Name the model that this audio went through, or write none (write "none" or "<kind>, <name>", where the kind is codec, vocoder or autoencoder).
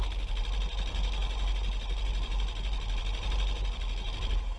none